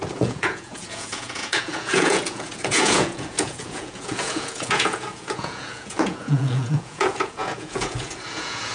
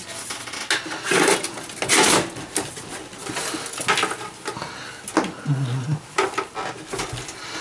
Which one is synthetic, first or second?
first